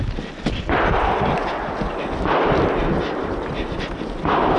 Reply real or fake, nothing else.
real